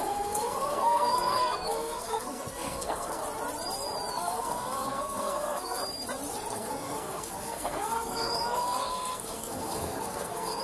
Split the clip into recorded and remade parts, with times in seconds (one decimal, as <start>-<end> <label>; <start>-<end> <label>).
0.0-3.2 remade; 3.2-4.1 recorded; 4.1-5.8 remade; 5.8-6.5 recorded; 6.5-10.6 remade